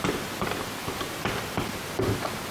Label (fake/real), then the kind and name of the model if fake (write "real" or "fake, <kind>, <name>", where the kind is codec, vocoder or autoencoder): real